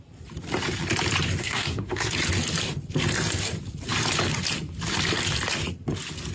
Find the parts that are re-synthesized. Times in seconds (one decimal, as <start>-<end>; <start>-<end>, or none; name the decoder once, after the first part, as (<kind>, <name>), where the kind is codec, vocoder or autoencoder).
1.4-2.1 (codec, SNAC)